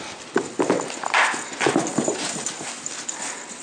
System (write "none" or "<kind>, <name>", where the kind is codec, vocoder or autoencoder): none